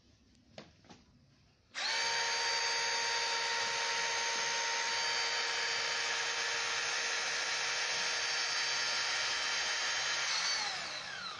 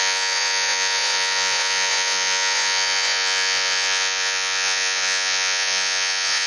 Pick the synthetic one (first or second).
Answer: second